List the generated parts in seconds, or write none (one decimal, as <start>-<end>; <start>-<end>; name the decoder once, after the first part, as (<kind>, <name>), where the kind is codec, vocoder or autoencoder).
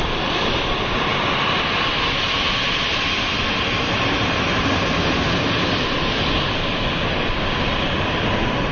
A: none